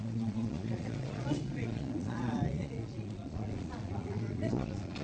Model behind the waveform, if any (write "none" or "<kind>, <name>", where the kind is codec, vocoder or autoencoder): vocoder, Vocos